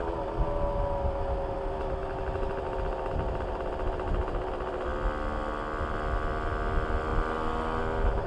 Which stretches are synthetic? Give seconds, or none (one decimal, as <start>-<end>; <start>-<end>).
none

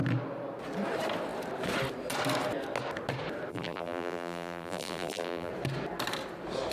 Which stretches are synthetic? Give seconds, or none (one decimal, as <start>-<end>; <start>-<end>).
3.5-5.5

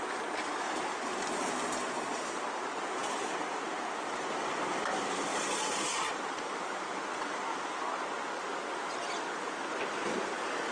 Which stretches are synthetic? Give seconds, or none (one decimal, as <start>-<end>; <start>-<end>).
5.3-6.9

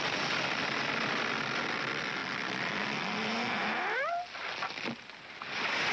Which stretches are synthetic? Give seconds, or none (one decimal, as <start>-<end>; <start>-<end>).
none